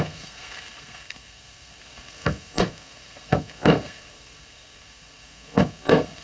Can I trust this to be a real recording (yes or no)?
no